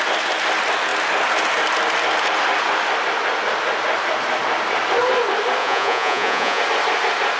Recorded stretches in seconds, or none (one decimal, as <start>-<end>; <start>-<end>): 0.0-5.6; 6.6-7.4